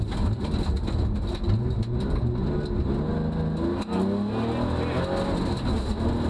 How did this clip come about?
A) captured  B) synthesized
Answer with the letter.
A